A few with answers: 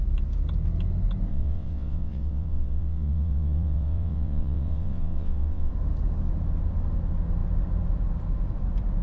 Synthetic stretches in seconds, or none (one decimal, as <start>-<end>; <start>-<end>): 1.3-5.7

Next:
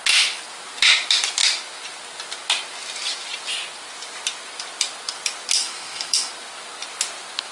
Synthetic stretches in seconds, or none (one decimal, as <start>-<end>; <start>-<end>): 5.6-6.3

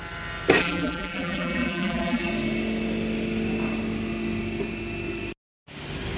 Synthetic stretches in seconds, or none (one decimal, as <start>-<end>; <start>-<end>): 0.6-2.3

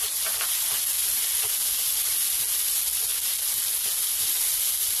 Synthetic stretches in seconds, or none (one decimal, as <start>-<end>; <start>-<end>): none

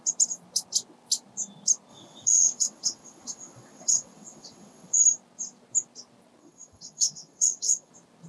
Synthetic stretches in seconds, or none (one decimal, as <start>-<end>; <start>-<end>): 1.9-5.0; 6.4-7.9